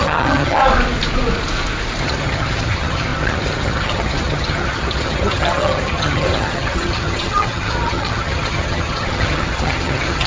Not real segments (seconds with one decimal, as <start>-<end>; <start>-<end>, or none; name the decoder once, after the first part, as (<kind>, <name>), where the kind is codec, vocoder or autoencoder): 0.0-0.6 (vocoder, HiFi-GAN); 2.0-10.3